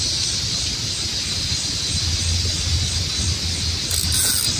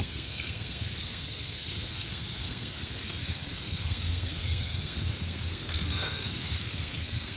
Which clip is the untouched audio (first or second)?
first